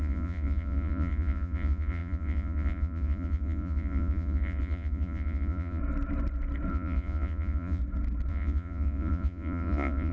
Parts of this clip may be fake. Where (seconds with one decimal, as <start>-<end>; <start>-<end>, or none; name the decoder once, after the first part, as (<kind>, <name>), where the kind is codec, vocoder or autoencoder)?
0.0-5.8 (vocoder, Vocos); 6.7-7.8; 8.3-10.1